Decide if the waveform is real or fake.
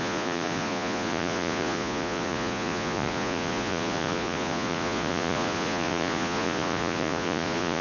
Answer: fake